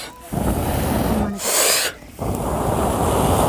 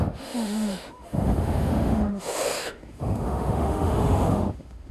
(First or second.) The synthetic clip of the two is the second